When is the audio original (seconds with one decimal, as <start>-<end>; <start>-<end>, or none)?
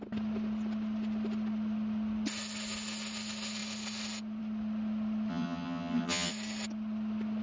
0.0-5.3; 6.3-7.4